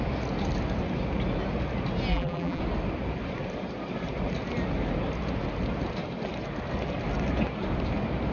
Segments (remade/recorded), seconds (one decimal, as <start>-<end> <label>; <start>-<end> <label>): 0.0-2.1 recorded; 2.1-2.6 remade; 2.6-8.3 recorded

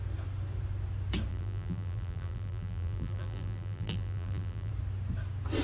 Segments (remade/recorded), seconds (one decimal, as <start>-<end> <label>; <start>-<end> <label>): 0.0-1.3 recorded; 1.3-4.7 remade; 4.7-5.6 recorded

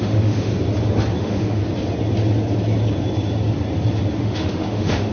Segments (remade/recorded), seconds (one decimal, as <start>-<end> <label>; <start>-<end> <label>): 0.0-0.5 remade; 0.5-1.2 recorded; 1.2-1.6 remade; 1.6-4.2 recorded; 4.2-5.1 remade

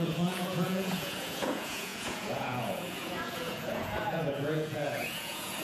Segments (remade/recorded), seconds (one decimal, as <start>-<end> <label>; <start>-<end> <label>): 0.0-5.6 remade

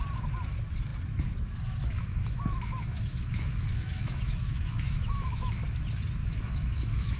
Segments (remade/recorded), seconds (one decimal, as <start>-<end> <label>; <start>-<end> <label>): 0.0-1.8 recorded; 1.8-5.5 remade; 5.5-6.2 recorded; 6.2-7.2 remade